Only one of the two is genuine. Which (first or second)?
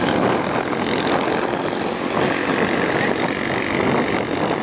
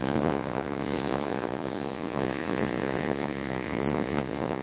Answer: first